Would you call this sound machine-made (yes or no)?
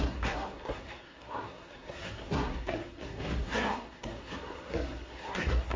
yes